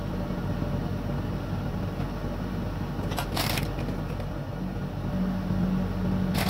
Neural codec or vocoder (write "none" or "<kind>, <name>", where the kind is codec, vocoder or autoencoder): none